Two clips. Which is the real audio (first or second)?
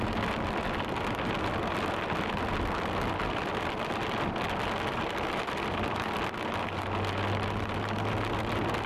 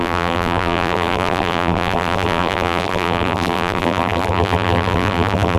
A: first